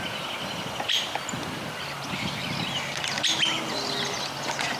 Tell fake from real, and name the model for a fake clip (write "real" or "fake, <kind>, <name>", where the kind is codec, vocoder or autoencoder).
real